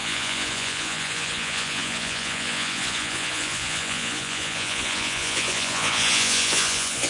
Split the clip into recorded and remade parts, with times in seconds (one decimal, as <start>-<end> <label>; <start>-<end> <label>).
0.0-7.1 remade